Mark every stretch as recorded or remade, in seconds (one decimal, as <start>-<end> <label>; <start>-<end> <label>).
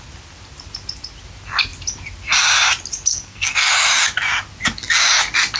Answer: 0.0-3.1 recorded; 3.1-3.7 remade; 3.7-5.6 recorded